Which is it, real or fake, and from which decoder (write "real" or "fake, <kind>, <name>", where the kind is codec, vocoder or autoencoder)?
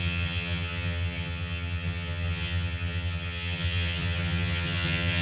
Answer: fake, vocoder, HiFi-GAN